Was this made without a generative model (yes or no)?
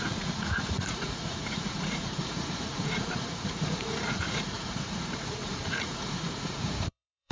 no